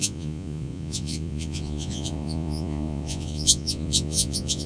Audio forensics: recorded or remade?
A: remade